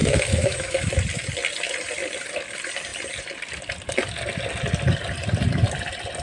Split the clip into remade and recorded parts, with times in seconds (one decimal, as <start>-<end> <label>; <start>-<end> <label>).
0.0-0.9 remade; 0.9-6.2 recorded